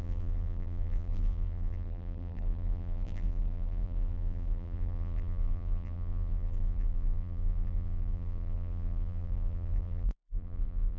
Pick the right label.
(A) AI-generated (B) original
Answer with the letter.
A